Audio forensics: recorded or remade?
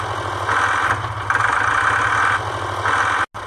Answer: recorded